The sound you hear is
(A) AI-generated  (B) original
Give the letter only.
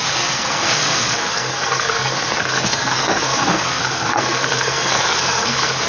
A